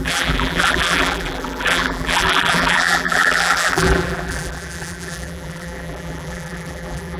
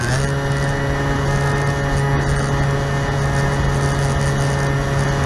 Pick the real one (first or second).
second